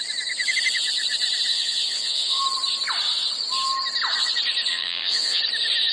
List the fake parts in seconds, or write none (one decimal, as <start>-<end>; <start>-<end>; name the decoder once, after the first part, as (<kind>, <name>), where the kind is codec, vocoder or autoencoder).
1.5-2.4 (vocoder, WaveNeXt); 4.7-5.4